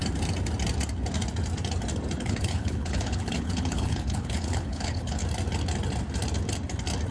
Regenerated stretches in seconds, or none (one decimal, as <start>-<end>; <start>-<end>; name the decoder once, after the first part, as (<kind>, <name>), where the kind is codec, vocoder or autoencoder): 2.2-5.2 (codec, HILCodec)